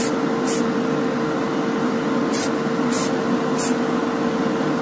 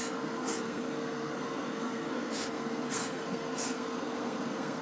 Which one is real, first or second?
first